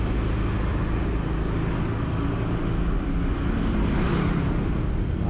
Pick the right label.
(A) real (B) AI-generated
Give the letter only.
A